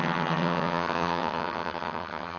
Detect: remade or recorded remade